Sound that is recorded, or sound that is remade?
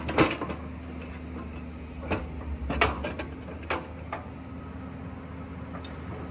recorded